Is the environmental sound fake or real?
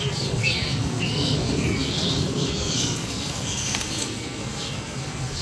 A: fake